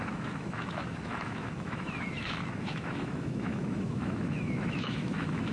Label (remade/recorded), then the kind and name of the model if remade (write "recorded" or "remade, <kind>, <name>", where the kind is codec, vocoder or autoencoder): remade, autoencoder, DAC-VAE